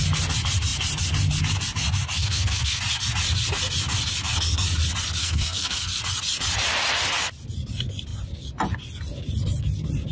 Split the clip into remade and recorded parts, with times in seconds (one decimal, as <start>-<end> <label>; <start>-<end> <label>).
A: 0.0-2.2 recorded; 2.2-2.8 remade; 2.8-5.2 recorded; 5.2-6.0 remade; 6.0-10.1 recorded